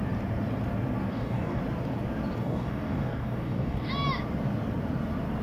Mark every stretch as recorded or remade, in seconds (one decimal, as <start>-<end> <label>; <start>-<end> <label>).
0.0-1.1 recorded; 1.1-1.6 remade; 1.6-2.4 recorded; 2.4-3.9 remade; 3.9-5.4 recorded